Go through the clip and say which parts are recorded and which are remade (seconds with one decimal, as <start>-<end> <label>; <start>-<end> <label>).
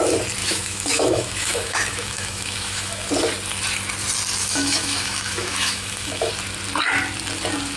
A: 0.0-0.4 recorded; 0.4-3.1 remade; 3.1-4.4 recorded; 4.4-6.3 remade; 6.3-7.8 recorded